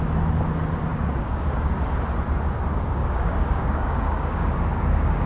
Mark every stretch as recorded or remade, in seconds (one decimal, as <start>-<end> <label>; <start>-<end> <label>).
0.0-0.9 recorded; 0.9-1.8 remade; 1.8-3.0 recorded; 3.0-5.3 remade